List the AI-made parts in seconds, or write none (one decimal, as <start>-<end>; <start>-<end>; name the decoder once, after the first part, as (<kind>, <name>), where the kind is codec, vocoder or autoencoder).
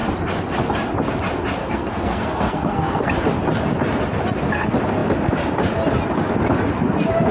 1.6-3.1 (codec, SNAC)